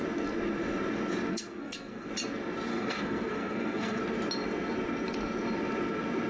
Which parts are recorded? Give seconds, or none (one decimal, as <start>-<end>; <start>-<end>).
0.0-1.3; 2.1-2.7; 4.0-6.3